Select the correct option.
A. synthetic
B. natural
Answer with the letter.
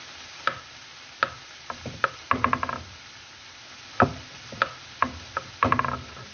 B